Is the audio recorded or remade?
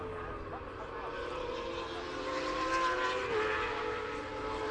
recorded